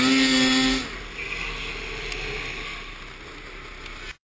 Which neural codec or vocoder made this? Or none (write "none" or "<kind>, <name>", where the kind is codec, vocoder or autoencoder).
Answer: none